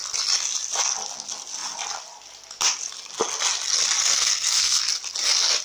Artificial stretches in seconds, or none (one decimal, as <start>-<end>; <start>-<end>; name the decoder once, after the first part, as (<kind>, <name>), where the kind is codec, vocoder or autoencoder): 4.0-4.8 (codec, SNAC)